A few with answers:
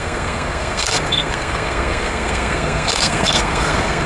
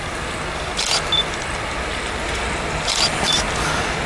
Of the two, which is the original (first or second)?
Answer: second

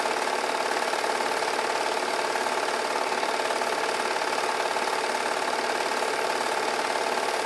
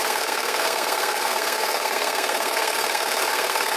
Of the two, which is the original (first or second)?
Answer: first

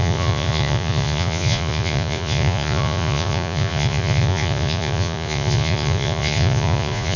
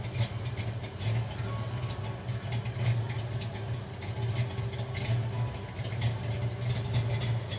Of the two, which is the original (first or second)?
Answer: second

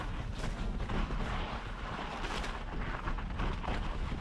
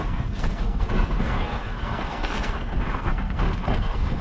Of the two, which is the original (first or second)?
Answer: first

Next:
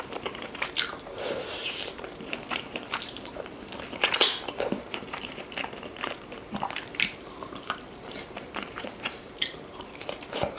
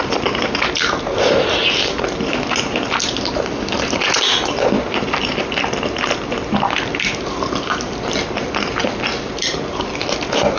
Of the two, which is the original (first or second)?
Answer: second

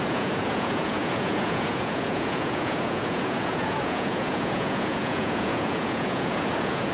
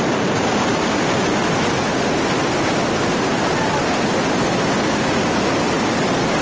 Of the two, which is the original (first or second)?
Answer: second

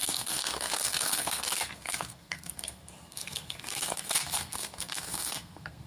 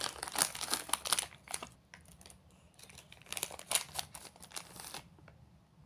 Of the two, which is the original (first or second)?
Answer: second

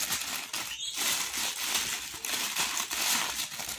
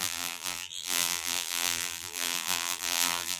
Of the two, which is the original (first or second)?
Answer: first